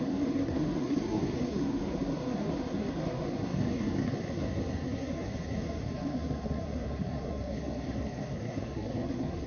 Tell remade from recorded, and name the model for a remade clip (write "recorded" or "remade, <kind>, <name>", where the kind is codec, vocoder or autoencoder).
remade, codec, SNAC